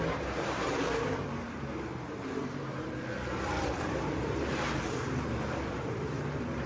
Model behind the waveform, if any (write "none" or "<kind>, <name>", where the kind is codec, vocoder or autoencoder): vocoder, BigVGAN v2